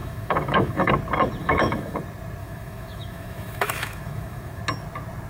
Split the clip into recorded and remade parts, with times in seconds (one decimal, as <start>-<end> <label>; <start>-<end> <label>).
0.0-0.9 remade; 0.9-1.4 recorded; 1.4-2.0 remade; 2.0-2.4 recorded; 2.4-4.6 remade; 4.6-5.3 recorded